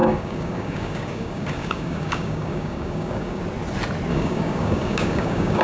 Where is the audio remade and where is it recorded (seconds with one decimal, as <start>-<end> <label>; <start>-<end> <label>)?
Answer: 0.0-3.4 remade; 3.4-4.1 recorded; 4.1-5.6 remade